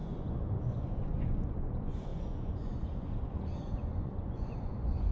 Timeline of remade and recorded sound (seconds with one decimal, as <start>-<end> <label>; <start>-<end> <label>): 0.0-5.1 remade